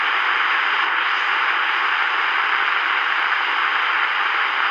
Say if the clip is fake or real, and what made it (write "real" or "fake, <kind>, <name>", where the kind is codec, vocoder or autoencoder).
real